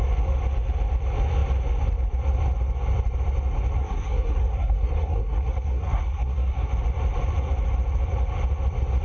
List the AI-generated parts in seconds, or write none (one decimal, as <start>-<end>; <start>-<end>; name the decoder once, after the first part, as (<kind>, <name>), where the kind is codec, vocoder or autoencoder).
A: 3.8-6.7 (codec, SNAC)